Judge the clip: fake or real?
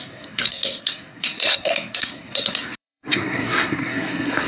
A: fake